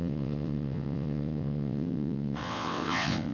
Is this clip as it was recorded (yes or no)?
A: no